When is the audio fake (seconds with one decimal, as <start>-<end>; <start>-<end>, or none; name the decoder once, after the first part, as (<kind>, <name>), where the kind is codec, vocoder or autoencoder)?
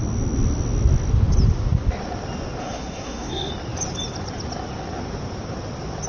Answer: 2.6-3.5 (codec, SNAC)